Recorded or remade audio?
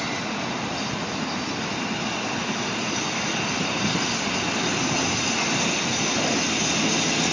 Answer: recorded